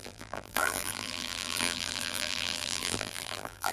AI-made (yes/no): yes